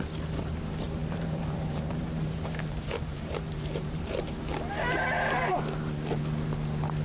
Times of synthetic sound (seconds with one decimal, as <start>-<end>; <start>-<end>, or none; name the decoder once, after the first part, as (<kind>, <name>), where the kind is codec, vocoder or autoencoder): 1.0-4.4 (vocoder, BigVGAN v2)